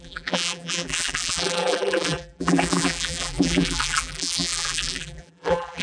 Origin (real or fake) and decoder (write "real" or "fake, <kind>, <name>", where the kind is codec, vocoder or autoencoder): fake, vocoder, BigVGAN v2